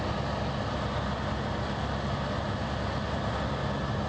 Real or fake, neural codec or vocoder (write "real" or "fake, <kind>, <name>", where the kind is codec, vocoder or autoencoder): real